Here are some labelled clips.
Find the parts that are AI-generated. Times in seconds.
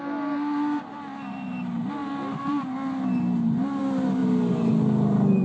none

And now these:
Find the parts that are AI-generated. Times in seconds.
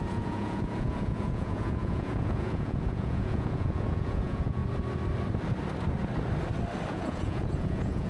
0.0-4.6; 6.9-8.1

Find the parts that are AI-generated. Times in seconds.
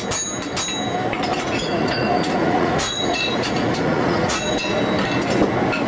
1.3-4.8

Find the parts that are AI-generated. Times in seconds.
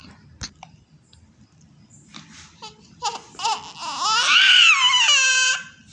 none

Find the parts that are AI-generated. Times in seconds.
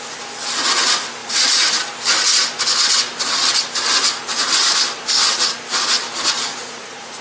1.2-1.8; 6.5-7.2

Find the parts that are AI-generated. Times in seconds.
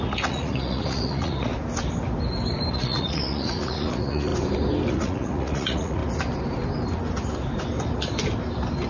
0.0-1.5; 2.7-4.3; 4.9-6.0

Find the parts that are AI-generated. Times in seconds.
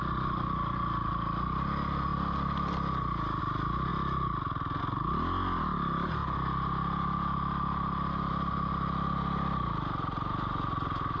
none